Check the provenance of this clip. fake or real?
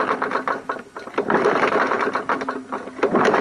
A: real